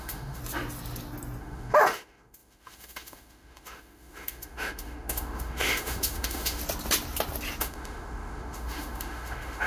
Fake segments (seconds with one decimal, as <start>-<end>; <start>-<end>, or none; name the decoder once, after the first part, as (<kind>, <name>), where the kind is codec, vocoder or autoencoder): 0.0-0.4 (autoencoder, DAC-VAE); 1.4-6.6; 7.6-9.7